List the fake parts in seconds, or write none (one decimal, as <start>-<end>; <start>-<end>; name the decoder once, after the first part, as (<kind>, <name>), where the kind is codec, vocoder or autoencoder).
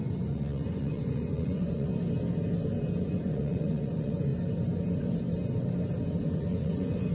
0.0-1.9 (vocoder, Vocos); 3.0-4.3; 6.2-7.1